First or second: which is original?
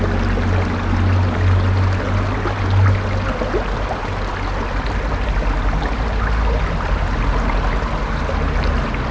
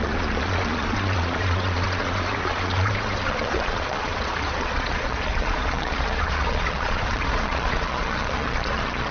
first